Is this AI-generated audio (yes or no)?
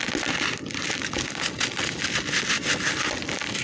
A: no